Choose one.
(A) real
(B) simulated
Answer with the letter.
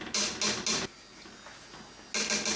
A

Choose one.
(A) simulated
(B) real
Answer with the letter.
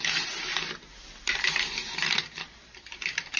B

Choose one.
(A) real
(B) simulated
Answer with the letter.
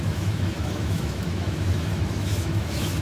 B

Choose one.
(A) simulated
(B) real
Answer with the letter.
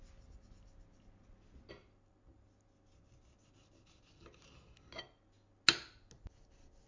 B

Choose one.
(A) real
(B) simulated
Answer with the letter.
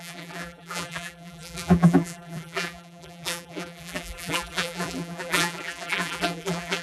B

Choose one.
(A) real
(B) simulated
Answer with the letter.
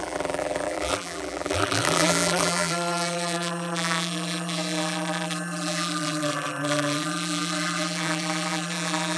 B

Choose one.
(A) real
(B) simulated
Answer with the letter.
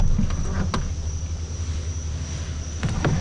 A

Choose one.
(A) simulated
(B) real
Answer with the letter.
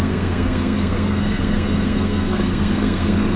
A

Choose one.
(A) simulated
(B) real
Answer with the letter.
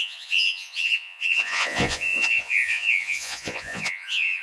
A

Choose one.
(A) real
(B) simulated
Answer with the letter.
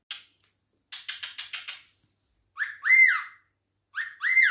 A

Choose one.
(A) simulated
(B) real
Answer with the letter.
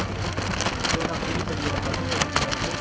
B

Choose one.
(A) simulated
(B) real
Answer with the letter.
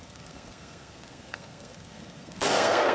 A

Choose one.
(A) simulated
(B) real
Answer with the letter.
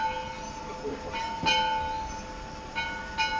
B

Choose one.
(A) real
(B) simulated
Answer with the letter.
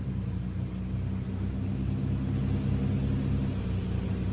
A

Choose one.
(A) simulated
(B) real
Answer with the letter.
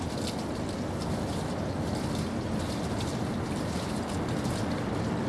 B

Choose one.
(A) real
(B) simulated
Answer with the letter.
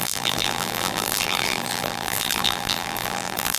B